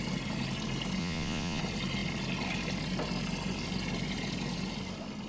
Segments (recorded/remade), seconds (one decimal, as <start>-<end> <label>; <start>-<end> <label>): 0.0-1.0 recorded; 1.0-1.6 remade; 1.6-5.3 recorded